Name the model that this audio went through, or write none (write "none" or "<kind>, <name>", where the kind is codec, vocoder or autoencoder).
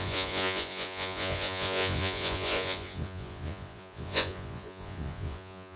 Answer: vocoder, Vocos